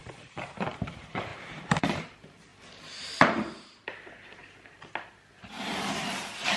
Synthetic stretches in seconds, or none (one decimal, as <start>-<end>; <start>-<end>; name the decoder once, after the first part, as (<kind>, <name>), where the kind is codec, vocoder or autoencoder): 0.0-2.5 (vocoder, BigVGAN v2); 3.0-4.4; 5.3-6.6